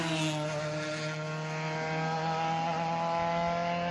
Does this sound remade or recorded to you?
recorded